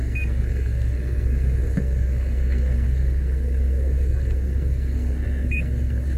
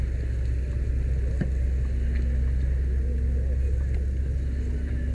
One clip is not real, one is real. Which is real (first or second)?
second